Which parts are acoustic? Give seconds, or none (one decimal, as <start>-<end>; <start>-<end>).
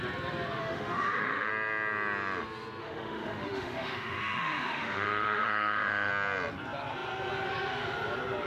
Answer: 0.0-0.6; 1.5-2.8; 6.1-8.5